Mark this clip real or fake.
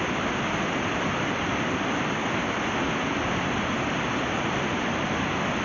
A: real